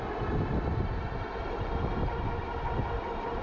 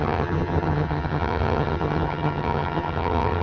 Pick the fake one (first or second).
second